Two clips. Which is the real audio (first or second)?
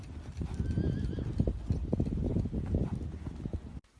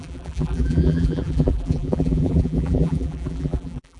first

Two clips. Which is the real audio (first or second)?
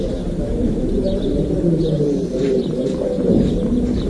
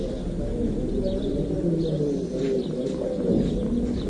second